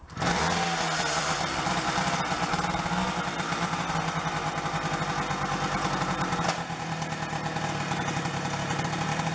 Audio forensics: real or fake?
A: real